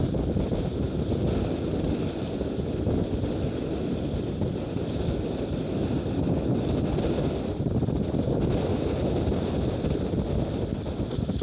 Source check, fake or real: real